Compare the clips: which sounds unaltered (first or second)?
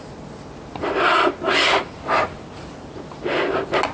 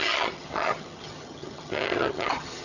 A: first